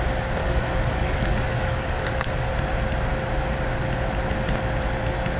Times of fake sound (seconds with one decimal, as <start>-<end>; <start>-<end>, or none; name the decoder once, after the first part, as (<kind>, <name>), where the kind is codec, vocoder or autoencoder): 0.4-2.5 (codec, DAC)